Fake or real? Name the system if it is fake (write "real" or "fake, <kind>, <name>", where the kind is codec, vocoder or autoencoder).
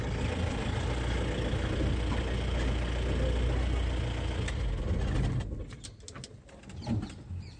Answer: real